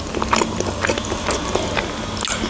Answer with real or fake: real